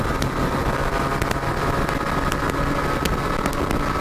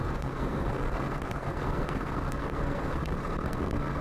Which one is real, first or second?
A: first